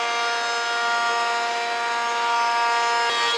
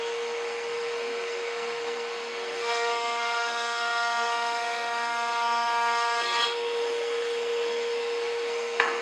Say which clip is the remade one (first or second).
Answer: second